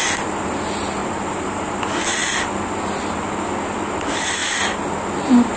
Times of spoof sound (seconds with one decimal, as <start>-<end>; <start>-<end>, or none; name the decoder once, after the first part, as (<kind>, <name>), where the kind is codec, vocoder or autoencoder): 1.0-1.8 (vocoder, BigVGAN v2)